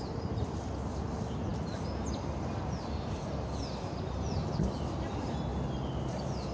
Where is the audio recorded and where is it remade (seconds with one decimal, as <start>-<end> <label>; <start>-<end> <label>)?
0.0-6.5 recorded